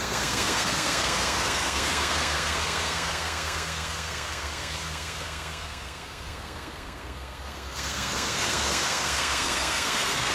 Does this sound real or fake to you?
fake